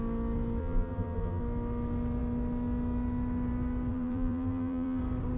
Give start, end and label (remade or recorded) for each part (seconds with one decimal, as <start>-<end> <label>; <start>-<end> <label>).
0.0-0.6 recorded; 0.6-1.4 remade; 1.4-3.9 recorded; 3.9-5.0 remade; 5.0-5.4 recorded